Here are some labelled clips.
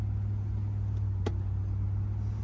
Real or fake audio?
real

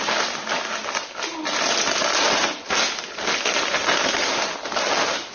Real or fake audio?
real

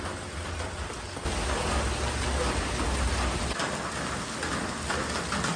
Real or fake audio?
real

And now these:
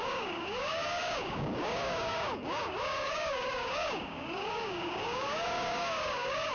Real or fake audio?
fake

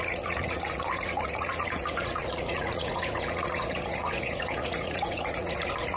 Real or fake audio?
fake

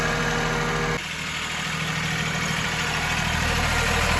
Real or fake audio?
real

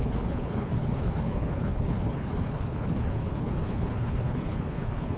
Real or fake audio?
fake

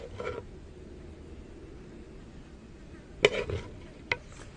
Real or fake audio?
real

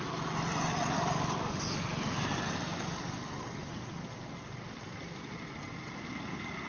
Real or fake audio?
real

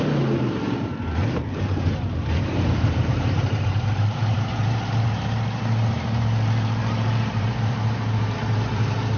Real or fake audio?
fake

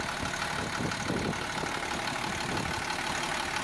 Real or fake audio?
real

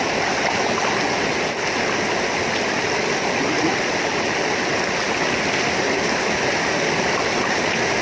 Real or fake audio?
real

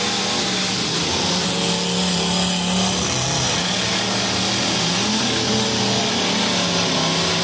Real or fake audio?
real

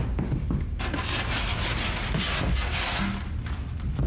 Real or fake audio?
real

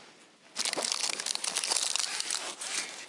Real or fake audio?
real